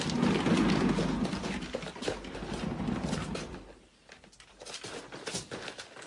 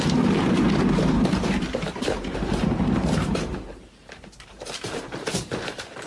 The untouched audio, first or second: first